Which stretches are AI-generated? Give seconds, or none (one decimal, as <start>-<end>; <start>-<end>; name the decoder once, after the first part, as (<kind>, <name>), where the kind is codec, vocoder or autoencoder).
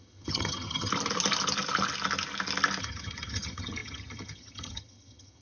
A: 0.0-0.9 (vocoder, HiFi-GAN); 2.8-5.4